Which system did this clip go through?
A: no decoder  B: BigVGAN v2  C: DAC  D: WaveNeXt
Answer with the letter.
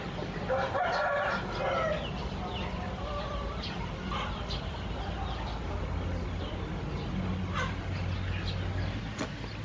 A